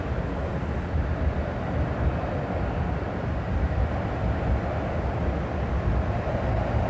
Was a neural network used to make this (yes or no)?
no